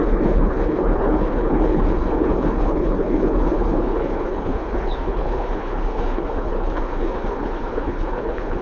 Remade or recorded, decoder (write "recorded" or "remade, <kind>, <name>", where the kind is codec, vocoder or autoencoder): remade, codec, HILCodec